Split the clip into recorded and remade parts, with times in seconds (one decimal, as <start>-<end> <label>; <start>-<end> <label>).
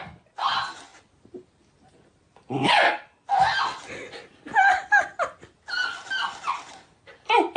0.0-7.6 recorded